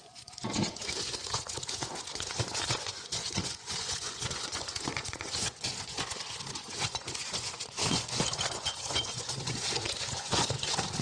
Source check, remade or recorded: remade